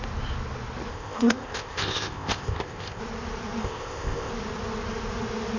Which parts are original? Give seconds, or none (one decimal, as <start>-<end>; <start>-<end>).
0.0-0.9; 3.0-3.6; 4.3-5.6